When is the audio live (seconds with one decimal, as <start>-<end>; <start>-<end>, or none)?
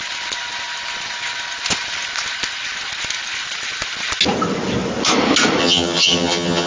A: 0.0-5.6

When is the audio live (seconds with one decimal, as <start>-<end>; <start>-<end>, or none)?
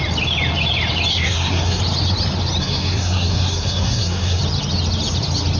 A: 0.0-1.1; 1.8-2.6; 4.4-5.6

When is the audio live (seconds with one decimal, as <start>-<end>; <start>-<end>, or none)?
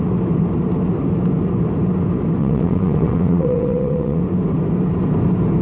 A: 0.0-2.4; 4.2-5.6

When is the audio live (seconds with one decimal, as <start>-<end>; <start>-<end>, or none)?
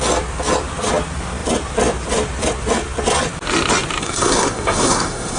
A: 0.0-4.0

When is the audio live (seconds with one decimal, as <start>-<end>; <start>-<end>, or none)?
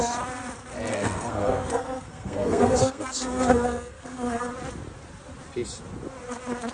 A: 0.0-0.9; 4.5-6.7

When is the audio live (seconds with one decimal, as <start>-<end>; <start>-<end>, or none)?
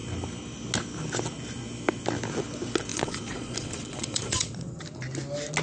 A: 0.0-2.9; 4.8-5.6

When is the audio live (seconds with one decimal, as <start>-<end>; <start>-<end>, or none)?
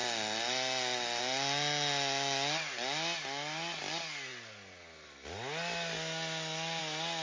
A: 0.0-7.2